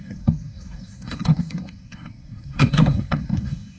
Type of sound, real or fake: fake